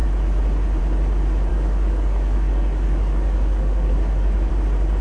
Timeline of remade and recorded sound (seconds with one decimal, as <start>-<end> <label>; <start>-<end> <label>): 0.0-1.5 recorded; 1.5-4.5 remade; 4.5-5.0 recorded